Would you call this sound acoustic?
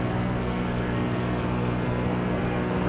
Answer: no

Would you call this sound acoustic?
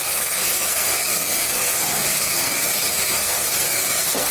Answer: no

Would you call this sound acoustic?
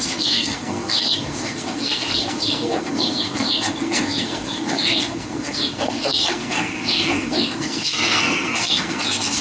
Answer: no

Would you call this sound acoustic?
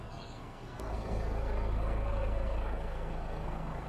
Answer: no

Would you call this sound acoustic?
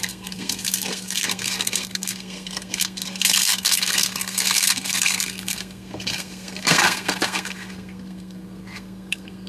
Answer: no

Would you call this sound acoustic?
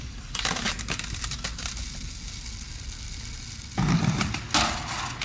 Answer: yes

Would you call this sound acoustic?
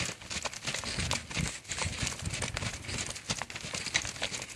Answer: yes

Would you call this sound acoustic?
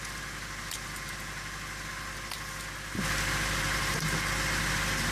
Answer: yes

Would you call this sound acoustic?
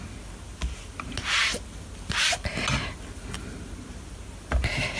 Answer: yes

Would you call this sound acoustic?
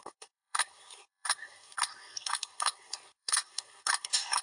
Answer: no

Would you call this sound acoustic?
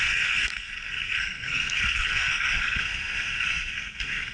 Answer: no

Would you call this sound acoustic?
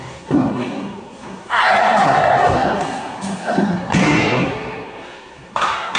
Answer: no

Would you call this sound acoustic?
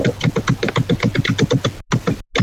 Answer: yes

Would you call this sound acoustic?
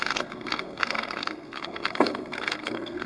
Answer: no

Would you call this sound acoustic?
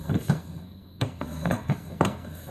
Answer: no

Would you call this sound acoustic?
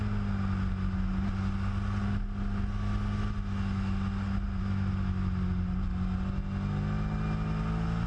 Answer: yes